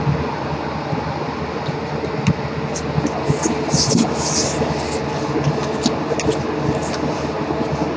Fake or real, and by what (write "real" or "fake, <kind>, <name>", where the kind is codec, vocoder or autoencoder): real